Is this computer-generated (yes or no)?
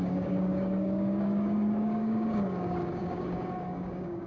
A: yes